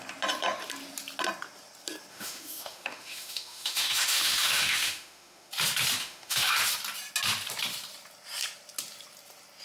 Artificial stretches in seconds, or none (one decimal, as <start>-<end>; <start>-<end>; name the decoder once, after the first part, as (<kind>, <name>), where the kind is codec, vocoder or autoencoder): 2.1-5.5 (autoencoder, DAC-VAE); 6.0-6.5